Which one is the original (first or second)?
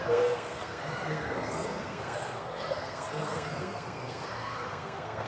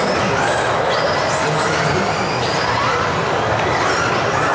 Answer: second